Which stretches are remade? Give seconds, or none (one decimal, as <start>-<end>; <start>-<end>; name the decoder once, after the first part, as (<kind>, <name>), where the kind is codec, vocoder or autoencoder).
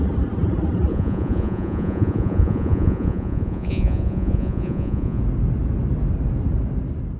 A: 0.9-5.2 (vocoder, Vocos)